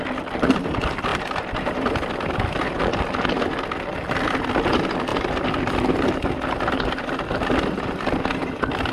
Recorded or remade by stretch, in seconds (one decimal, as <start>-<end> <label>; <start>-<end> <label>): 0.0-8.9 recorded